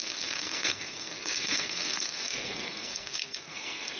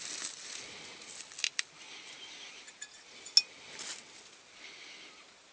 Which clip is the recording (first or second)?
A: second